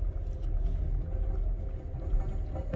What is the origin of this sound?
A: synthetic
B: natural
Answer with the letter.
B